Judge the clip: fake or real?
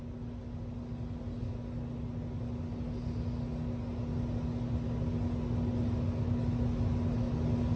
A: real